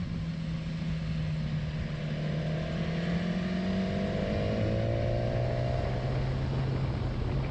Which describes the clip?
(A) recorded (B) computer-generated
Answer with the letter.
A